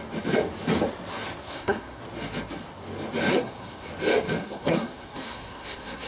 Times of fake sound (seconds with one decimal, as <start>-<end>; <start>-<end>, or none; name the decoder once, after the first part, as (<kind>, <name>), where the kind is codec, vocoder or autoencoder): 1.4-2.0 (codec, SNAC); 3.3-3.9; 4.4-6.1